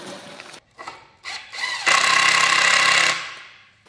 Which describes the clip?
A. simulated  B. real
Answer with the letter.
B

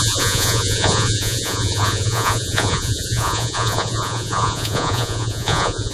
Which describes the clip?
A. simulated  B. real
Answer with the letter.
A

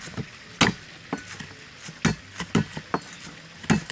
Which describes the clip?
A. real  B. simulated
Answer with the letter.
A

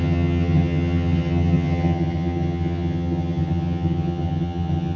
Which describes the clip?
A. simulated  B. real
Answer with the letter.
A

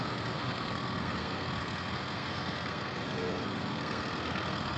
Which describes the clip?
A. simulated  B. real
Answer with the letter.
A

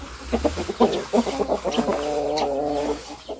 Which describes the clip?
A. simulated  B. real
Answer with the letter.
B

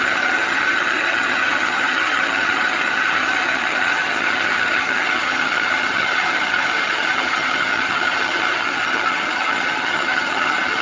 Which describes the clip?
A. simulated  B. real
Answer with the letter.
A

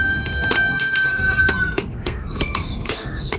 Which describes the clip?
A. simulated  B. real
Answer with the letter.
A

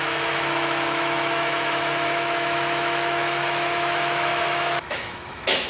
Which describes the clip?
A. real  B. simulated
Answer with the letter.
B